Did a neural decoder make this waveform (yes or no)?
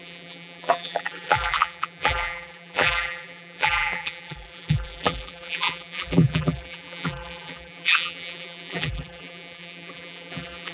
yes